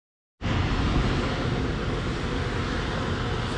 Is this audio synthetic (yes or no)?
no